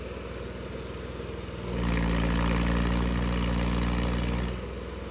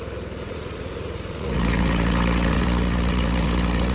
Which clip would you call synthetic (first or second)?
second